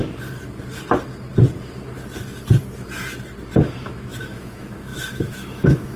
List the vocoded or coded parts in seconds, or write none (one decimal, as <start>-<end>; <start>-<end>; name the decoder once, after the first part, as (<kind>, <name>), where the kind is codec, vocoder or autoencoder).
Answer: 3.6-6.0 (autoencoder, DAC-VAE)